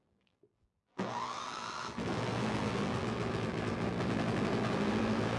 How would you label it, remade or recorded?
remade